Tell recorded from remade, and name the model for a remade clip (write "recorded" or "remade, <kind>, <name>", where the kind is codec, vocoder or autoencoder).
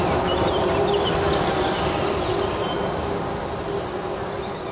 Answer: recorded